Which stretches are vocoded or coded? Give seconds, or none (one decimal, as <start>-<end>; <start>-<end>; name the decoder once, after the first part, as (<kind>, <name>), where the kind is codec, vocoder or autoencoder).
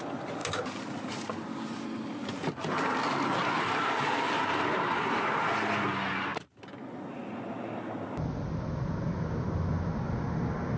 none